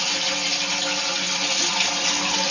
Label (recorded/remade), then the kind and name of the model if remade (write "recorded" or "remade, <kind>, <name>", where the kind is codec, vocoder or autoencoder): recorded